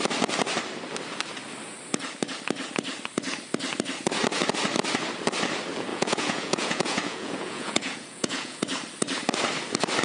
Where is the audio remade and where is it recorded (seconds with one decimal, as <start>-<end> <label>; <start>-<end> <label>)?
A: 0.0-5.9 recorded; 5.9-8.6 remade; 8.6-10.0 recorded